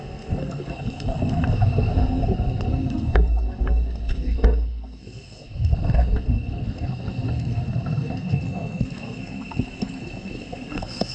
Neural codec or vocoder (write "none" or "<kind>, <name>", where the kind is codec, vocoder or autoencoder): codec, SNAC